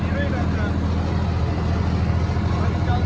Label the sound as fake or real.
real